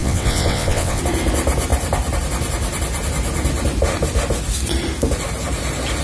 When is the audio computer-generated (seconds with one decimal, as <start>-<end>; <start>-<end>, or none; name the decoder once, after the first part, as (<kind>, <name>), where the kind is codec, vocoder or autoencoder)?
0.0-1.0 (vocoder, WaveNeXt)